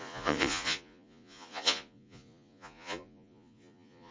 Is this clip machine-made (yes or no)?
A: yes